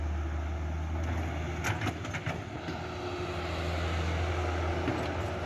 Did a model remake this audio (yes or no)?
no